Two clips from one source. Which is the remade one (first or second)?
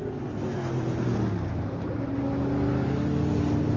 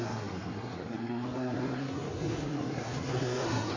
second